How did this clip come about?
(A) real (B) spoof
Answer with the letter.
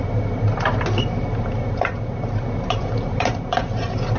A